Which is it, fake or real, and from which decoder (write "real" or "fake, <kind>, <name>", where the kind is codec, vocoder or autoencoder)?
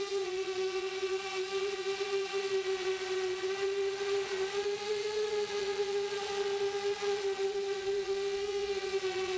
fake, vocoder, Vocos